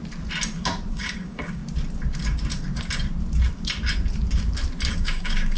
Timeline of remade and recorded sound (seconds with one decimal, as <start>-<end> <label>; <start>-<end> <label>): 0.0-0.9 recorded; 0.9-1.6 remade; 1.6-4.9 recorded; 4.9-5.6 remade